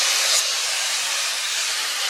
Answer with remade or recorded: recorded